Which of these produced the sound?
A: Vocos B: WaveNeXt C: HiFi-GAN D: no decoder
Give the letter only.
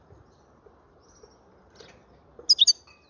D